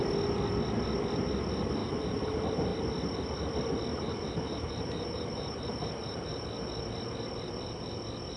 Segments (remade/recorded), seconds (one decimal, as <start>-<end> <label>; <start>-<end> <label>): 0.0-1.8 recorded; 1.8-2.3 remade; 2.3-3.9 recorded; 3.9-6.4 remade; 6.4-8.4 recorded

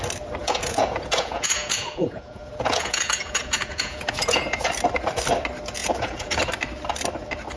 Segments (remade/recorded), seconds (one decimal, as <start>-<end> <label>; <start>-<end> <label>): 0.0-0.4 recorded; 0.4-4.7 remade; 4.7-5.8 recorded; 5.8-6.4 remade; 6.4-7.6 recorded